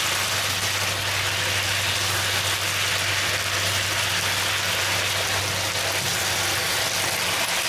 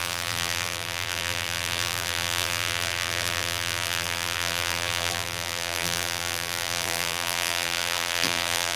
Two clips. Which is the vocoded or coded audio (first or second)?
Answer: second